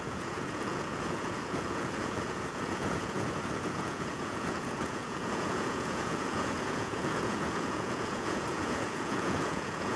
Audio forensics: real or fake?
fake